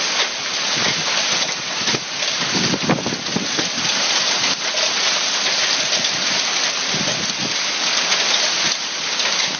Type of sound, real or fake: real